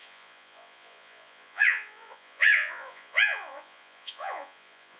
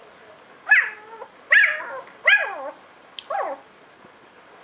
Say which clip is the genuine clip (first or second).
second